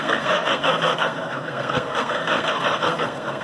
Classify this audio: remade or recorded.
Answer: remade